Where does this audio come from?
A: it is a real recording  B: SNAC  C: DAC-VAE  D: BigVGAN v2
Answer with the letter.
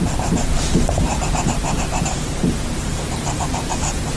D